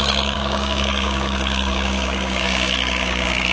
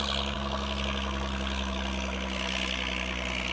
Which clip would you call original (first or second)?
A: second